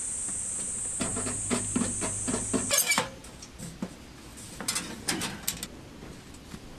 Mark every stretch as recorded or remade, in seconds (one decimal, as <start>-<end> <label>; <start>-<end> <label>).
0.0-6.8 recorded